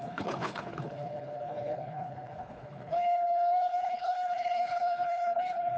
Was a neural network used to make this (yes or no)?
yes